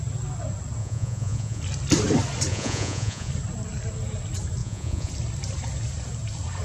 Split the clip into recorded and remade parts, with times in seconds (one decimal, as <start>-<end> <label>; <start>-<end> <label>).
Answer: 0.0-0.8 recorded; 0.8-1.6 remade; 1.6-2.5 recorded; 2.5-3.3 remade; 3.3-4.6 recorded; 4.6-5.1 remade; 5.1-6.6 recorded